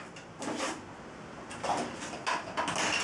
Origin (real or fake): real